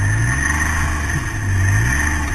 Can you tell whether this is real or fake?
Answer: real